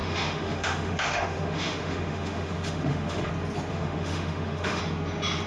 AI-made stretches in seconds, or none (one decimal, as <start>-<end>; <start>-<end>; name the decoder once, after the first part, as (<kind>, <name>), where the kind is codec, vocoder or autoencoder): 0.0-3.3 (autoencoder, DAC-VAE); 3.7-4.8